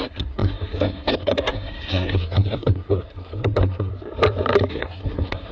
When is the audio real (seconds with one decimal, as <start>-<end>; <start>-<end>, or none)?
3.9-4.7